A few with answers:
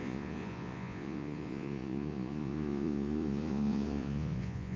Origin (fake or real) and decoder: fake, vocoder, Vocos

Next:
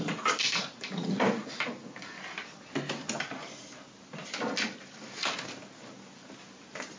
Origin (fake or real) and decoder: real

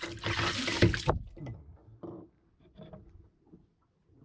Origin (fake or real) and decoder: real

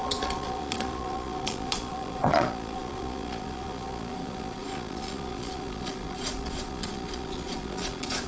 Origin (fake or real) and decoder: fake, vocoder, Vocos